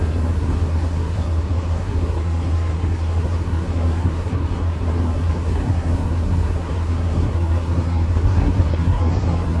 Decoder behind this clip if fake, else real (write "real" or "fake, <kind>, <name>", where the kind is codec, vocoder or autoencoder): fake, codec, SNAC